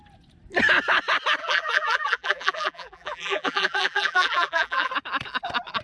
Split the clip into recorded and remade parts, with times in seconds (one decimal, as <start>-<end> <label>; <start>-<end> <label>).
0.0-1.4 recorded; 1.4-4.9 remade; 4.9-5.8 recorded